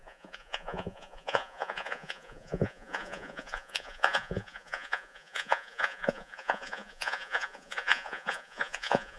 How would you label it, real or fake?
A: fake